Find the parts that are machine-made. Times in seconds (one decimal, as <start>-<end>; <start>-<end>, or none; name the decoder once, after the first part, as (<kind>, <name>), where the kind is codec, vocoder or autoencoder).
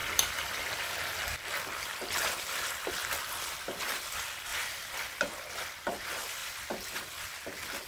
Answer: 0.0-0.9 (vocoder, BigVGAN v2); 3.0-3.9; 4.5-5.2; 6.4-6.9